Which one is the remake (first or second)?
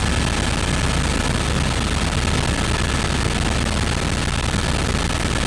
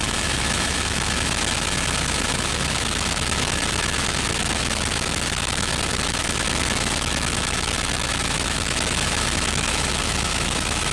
second